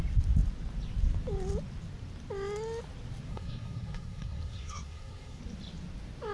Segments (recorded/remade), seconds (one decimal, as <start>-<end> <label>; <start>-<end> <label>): 0.0-3.3 recorded; 3.3-5.4 remade; 5.4-6.3 recorded